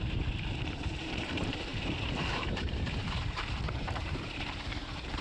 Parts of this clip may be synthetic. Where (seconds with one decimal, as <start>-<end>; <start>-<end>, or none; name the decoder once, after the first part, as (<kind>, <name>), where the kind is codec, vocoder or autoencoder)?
0.0-5.2 (vocoder, BigVGAN v2)

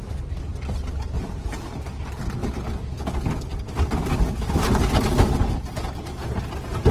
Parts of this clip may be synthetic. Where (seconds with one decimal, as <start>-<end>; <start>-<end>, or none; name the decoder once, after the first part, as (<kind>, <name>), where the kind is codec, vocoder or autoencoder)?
none

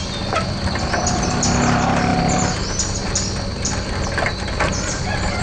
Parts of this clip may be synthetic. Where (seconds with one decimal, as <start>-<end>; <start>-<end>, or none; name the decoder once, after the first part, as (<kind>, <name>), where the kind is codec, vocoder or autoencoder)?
none